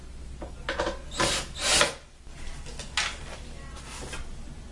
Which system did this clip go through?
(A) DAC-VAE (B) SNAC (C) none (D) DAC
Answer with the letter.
C